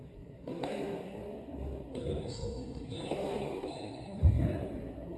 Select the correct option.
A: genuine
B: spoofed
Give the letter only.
B